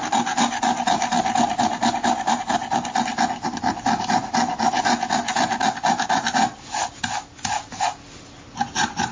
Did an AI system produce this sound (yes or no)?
no